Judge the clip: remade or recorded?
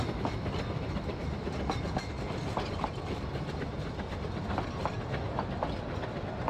recorded